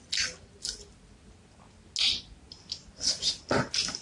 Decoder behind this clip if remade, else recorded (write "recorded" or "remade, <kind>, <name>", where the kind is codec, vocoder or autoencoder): recorded